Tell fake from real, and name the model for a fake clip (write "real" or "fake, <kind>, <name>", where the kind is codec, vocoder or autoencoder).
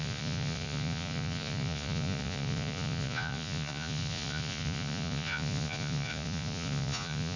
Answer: fake, vocoder, Vocos